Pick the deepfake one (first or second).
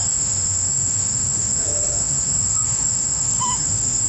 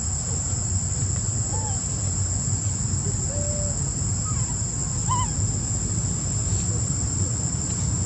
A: first